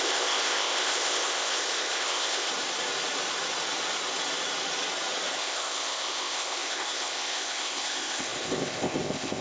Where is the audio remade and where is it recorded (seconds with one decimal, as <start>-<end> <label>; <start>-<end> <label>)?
0.0-2.5 remade; 2.5-5.4 recorded; 5.4-9.4 remade